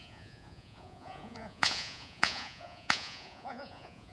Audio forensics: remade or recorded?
remade